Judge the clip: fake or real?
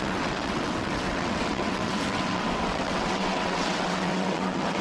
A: fake